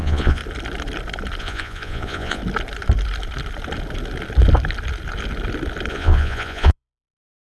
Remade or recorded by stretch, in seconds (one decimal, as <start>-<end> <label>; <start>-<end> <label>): 0.0-0.4 remade; 0.4-1.4 recorded; 1.4-2.4 remade; 2.4-5.9 recorded; 5.9-7.6 remade